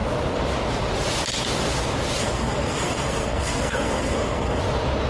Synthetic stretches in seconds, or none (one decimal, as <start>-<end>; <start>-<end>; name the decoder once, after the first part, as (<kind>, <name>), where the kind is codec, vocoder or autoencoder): 2.2-4.6 (codec, SNAC)